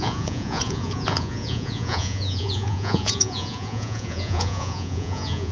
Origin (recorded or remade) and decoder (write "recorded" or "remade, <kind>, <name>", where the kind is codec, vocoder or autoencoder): remade, vocoder, Vocos